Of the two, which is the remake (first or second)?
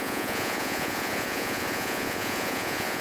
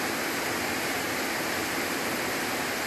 first